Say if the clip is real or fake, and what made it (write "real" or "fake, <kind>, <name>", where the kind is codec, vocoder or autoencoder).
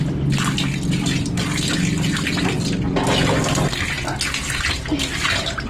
real